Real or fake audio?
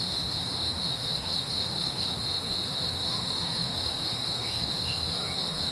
fake